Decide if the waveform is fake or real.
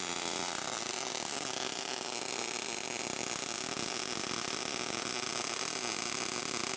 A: real